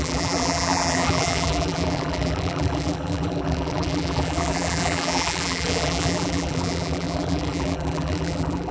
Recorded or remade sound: remade